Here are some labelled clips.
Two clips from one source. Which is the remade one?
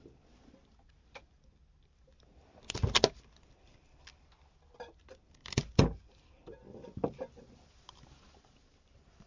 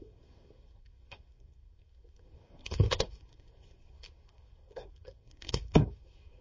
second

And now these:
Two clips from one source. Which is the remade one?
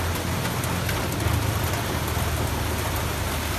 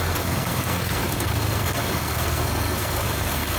second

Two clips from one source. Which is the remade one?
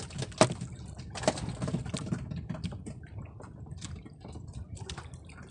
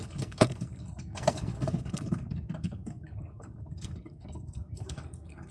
second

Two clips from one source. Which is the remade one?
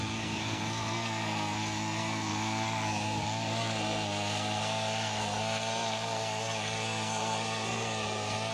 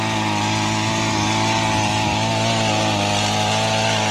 first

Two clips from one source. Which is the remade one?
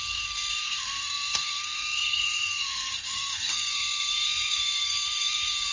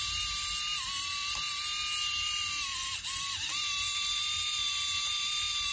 first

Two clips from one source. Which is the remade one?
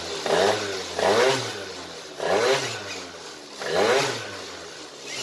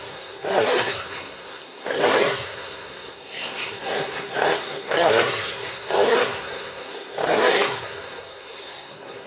second